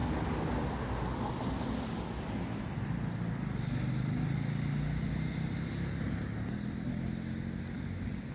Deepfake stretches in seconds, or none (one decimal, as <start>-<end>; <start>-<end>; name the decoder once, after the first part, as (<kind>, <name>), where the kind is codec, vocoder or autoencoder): none